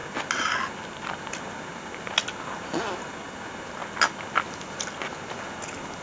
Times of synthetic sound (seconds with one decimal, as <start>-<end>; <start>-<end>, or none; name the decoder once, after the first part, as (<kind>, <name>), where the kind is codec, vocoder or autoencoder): none